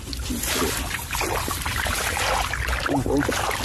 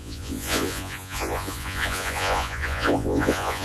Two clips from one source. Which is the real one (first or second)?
first